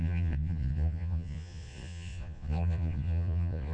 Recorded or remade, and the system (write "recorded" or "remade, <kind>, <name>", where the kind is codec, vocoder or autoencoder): remade, vocoder, Vocos